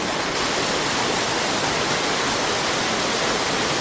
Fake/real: real